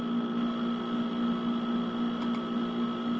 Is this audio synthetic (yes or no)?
no